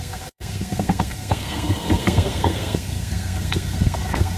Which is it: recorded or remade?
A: remade